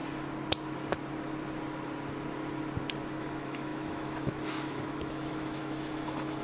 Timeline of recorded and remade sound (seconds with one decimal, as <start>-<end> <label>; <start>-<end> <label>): 0.0-3.2 recorded; 3.2-6.4 remade